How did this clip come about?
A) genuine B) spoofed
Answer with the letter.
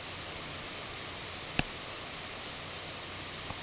A